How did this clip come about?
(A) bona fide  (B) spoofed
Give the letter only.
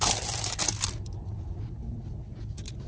A